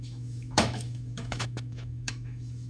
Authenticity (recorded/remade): remade